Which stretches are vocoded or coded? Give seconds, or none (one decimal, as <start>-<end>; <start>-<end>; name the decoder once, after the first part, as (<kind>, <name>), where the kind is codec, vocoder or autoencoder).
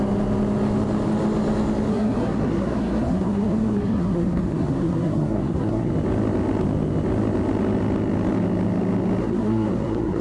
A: 1.9-5.9 (codec, SNAC); 9.2-10.2